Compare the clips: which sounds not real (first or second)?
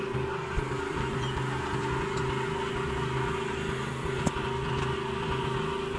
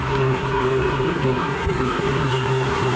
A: second